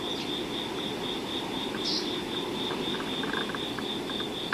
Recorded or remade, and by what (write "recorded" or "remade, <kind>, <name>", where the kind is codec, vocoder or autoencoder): recorded